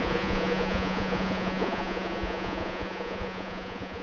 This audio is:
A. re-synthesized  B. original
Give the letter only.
A